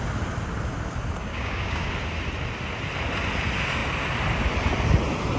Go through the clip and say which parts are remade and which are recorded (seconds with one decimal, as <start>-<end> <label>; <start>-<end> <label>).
0.0-1.3 recorded; 1.3-1.9 remade; 1.9-5.4 recorded